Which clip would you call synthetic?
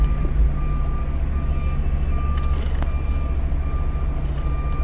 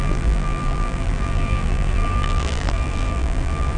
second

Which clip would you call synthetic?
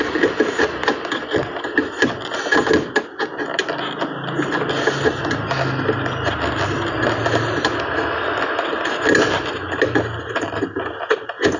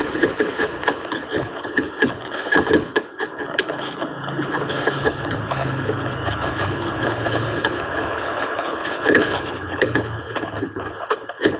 second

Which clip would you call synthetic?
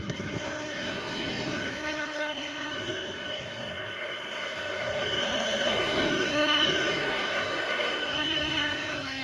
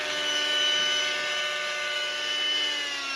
first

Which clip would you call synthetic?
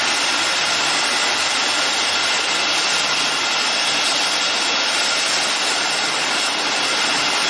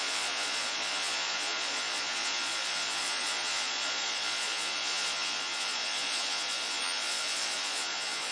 second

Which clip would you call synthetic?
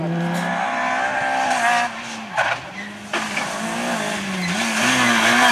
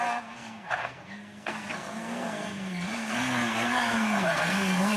second